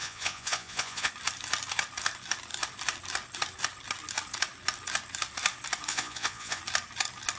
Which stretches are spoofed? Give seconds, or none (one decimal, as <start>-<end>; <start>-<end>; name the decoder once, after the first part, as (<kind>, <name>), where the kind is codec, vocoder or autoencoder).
0.0-1.1 (vocoder, Vocos); 5.9-6.6